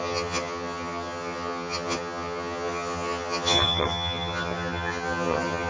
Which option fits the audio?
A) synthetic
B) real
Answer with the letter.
A